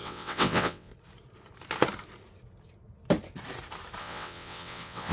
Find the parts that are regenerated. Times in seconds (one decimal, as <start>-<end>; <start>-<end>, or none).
0.0-0.9; 4.0-5.1